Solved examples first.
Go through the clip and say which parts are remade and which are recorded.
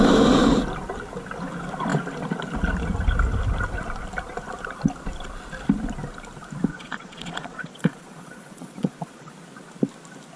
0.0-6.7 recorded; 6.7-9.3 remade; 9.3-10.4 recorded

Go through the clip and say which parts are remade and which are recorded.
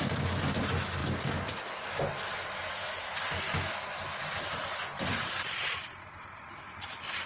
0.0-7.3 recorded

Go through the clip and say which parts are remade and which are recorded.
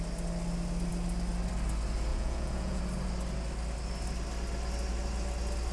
0.0-2.1 recorded; 2.1-2.8 remade; 2.8-5.7 recorded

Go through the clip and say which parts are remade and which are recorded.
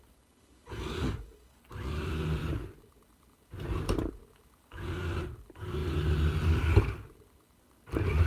0.0-8.3 recorded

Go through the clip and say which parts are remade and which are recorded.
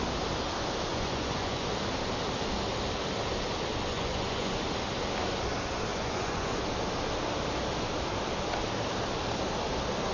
0.0-0.9 recorded; 0.9-1.7 remade; 1.7-3.9 recorded; 3.9-4.6 remade; 4.6-5.9 recorded; 5.9-6.6 remade; 6.6-10.1 recorded